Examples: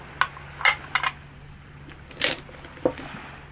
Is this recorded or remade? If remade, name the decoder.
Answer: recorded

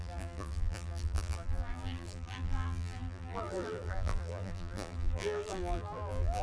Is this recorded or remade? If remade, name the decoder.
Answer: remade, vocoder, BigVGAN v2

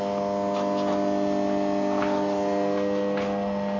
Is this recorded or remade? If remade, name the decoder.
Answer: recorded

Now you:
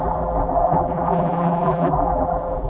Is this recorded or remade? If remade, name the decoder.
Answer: remade, vocoder, BigVGAN v2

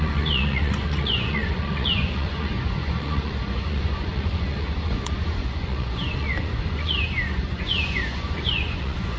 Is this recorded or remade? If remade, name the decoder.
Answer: remade, vocoder, Vocos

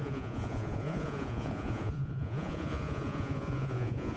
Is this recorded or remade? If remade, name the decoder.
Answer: remade, vocoder, Vocos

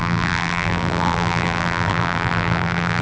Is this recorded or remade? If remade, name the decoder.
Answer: remade, vocoder, BigVGAN v2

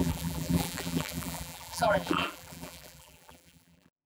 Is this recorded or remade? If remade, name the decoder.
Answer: remade, vocoder, BigVGAN v2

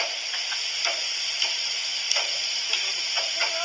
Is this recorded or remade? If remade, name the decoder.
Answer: recorded